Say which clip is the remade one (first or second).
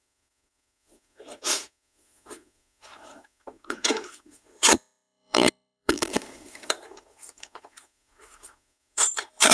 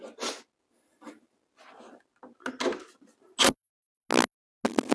first